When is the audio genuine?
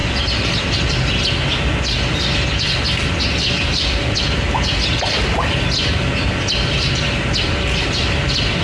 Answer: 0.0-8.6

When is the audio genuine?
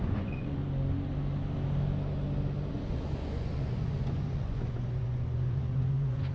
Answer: 0.6-2.7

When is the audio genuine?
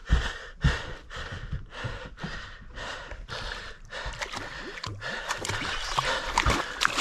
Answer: 0.0-7.0